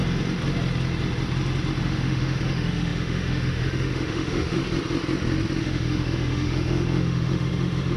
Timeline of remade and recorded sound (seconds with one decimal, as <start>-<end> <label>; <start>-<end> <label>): 0.0-1.8 recorded; 1.8-4.6 remade; 4.6-5.6 recorded; 5.6-8.0 remade